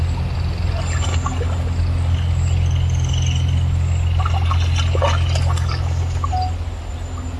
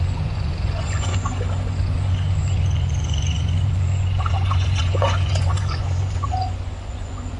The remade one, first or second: second